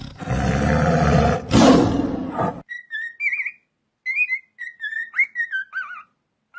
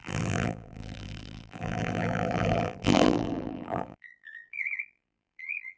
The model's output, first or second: second